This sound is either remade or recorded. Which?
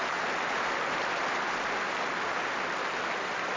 recorded